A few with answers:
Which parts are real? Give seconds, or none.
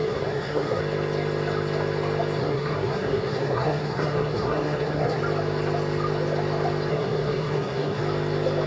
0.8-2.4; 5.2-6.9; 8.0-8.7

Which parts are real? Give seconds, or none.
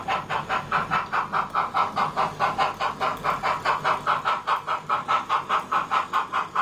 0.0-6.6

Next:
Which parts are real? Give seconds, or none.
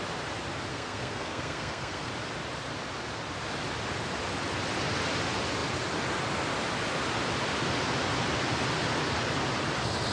0.0-0.7; 2.1-10.1